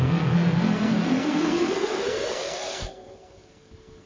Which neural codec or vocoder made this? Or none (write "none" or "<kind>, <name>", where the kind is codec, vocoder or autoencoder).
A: codec, SNAC